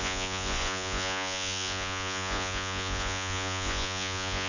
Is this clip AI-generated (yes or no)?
yes